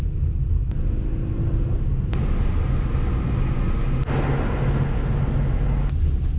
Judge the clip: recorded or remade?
recorded